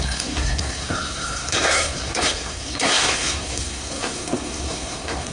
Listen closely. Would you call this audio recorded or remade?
remade